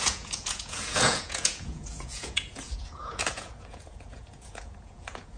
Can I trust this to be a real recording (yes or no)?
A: no